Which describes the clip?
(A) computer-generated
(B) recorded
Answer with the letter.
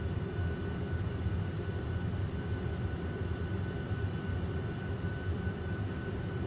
A